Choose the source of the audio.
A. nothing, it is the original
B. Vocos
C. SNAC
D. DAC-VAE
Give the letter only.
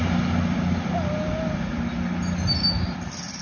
A